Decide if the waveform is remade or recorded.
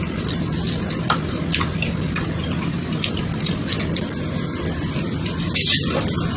recorded